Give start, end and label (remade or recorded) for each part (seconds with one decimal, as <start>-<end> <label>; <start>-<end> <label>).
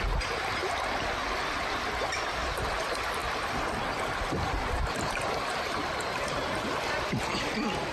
0.0-3.2 recorded; 3.2-7.9 remade